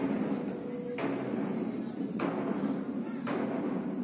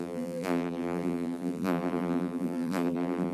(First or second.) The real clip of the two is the first